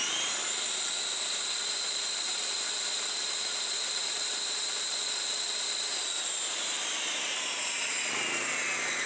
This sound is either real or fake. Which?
fake